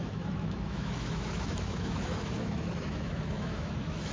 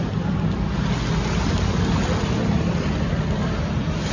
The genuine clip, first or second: second